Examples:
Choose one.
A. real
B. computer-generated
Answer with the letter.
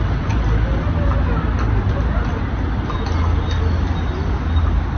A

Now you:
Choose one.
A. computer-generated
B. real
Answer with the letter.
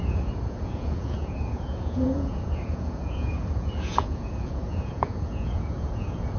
A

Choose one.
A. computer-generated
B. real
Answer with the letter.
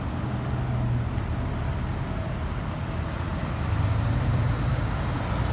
B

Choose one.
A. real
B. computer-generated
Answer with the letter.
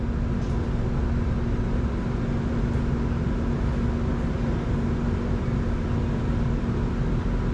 A